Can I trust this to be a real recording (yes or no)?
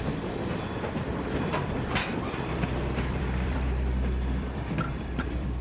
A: no